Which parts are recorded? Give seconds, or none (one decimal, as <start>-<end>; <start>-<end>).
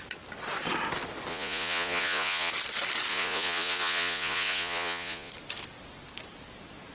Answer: 0.0-1.3; 2.5-3.1; 5.3-6.9